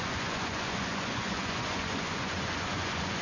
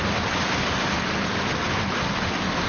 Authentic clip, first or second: second